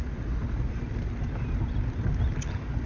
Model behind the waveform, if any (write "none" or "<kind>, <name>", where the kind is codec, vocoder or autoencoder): none